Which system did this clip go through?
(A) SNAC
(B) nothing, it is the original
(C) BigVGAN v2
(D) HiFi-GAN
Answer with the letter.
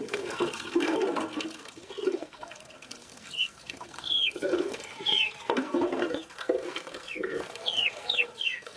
A